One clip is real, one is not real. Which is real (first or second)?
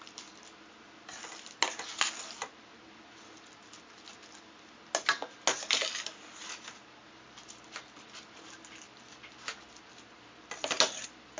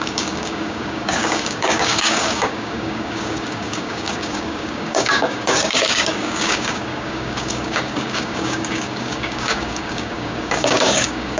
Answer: first